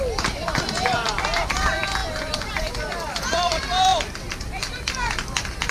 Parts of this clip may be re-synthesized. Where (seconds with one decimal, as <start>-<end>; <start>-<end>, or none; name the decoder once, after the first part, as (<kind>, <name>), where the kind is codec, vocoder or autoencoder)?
0.0-5.7 (vocoder, BigVGAN v2)

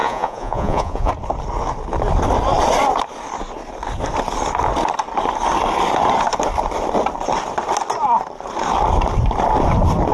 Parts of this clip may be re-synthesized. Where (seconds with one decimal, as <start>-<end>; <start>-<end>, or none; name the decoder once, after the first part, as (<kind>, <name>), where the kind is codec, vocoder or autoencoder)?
0.0-1.1 (vocoder, Vocos)

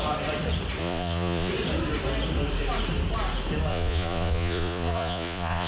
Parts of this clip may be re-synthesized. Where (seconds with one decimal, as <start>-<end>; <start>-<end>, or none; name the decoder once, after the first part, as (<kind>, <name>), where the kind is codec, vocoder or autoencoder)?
0.8-1.5 (vocoder, Vocos); 3.7-5.7

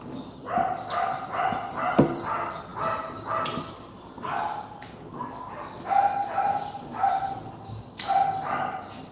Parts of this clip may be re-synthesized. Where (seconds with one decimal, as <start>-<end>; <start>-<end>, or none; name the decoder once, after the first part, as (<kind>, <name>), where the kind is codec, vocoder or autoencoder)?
none

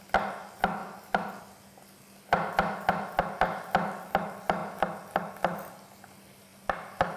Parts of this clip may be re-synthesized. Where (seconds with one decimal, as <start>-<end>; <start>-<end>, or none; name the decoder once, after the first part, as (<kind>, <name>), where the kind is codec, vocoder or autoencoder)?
none